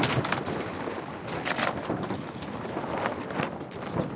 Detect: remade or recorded recorded